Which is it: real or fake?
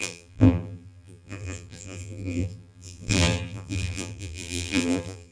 fake